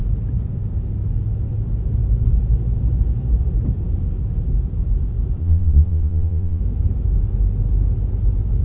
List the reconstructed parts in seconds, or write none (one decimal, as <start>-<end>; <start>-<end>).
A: 5.4-6.6

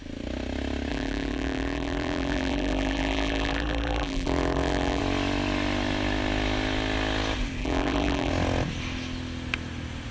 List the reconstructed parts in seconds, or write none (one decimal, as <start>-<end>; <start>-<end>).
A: 0.9-5.0; 7.6-8.3

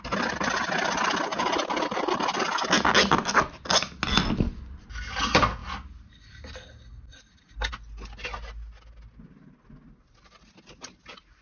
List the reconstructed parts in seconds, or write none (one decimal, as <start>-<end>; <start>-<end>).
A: 1.3-2.4

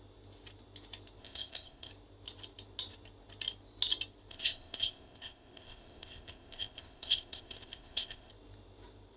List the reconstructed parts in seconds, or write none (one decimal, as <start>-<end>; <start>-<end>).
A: 1.2-1.9; 4.3-8.3

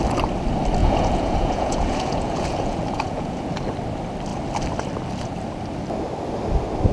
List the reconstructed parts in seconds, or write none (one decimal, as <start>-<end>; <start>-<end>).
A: 0.8-3.5

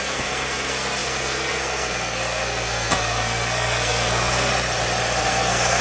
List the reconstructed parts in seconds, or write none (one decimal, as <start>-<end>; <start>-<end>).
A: 0.0-4.5; 5.2-5.8